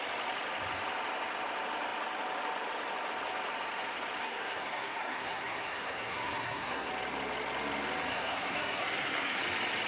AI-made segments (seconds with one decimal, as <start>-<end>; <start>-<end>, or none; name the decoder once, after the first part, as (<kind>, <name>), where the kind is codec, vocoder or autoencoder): 4.2-6.9 (codec, SNAC); 8.1-9.4